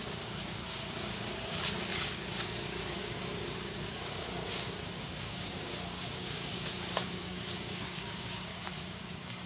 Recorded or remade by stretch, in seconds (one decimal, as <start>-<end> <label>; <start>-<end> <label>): 0.0-9.5 remade